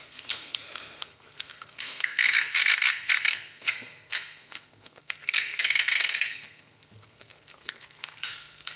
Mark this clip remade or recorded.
remade